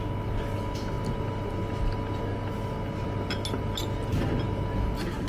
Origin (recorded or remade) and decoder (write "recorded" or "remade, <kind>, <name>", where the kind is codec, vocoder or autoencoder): recorded